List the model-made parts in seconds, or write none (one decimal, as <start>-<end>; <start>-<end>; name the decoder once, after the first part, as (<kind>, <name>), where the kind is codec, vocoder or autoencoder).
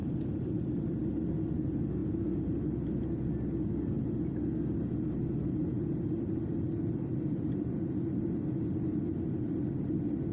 none